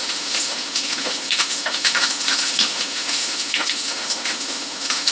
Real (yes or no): no